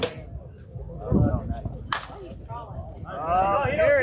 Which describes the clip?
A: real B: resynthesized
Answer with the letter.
A